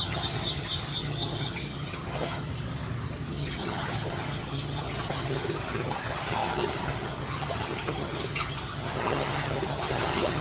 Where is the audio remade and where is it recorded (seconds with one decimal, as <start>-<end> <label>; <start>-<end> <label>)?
0.0-2.5 remade; 2.5-3.3 recorded; 3.3-10.4 remade